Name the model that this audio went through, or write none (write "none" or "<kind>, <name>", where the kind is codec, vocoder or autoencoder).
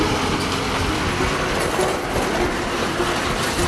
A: vocoder, BigVGAN v2